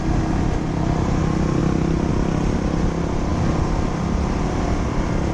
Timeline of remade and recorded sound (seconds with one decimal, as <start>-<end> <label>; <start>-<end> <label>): 0.0-5.3 recorded